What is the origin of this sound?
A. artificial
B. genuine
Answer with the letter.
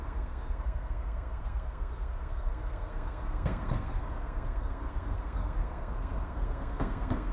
A